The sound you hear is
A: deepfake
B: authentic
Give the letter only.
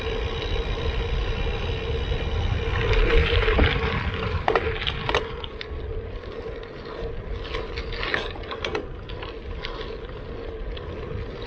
B